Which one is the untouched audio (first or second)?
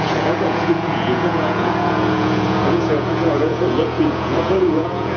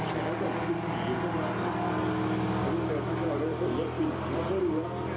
second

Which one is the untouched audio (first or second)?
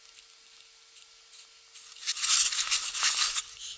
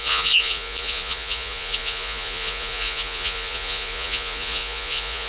first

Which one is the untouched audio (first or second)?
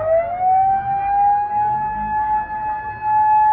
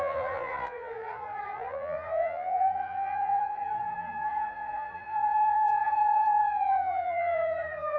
first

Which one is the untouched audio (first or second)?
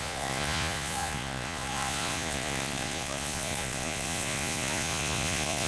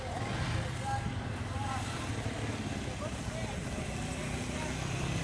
second